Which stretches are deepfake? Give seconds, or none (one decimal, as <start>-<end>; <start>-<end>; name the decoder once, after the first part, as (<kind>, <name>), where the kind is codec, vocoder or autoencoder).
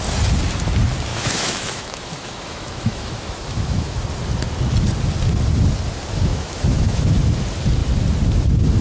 1.1-4.0 (autoencoder, DAC-VAE); 6.3-7.1